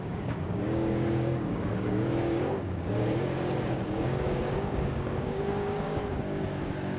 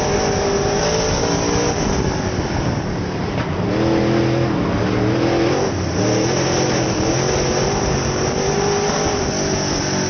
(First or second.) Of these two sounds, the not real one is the first